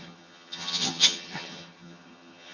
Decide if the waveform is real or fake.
fake